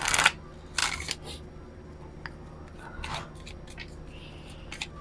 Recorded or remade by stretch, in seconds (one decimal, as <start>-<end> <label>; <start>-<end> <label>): 0.0-5.0 recorded